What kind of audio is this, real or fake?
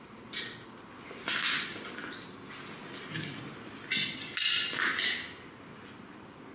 real